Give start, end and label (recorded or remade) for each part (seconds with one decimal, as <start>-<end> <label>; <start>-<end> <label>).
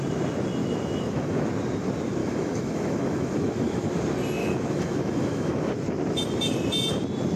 0.0-0.6 recorded; 0.6-1.5 remade; 1.5-2.2 recorded; 2.2-3.9 remade; 3.9-4.4 recorded; 4.4-5.7 remade; 5.7-7.4 recorded